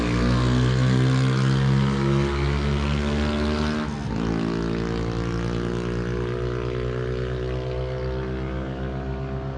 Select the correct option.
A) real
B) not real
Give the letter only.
A